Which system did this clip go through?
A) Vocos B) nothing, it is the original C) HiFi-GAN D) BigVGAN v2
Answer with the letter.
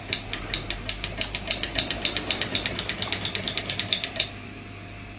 B